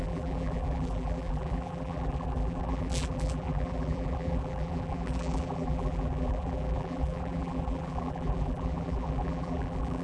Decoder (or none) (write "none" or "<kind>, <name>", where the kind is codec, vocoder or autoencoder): vocoder, BigVGAN v2